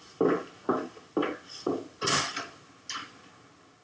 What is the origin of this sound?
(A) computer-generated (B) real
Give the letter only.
B